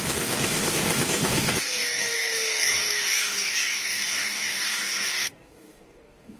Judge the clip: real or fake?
fake